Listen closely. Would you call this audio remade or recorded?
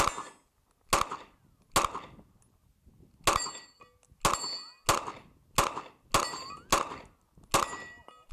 recorded